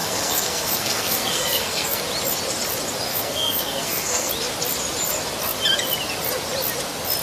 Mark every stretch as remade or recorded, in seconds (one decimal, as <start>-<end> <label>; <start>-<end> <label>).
0.0-2.0 remade; 2.0-3.1 recorded; 3.1-4.3 remade; 4.3-7.2 recorded